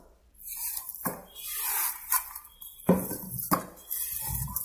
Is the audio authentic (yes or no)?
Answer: yes